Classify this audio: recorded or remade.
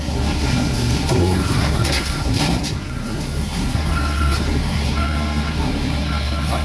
remade